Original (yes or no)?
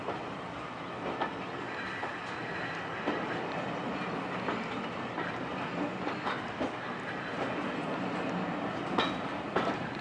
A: yes